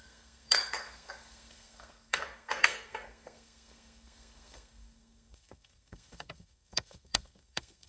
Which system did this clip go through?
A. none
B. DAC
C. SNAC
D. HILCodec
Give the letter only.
C